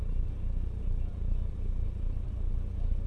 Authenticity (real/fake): real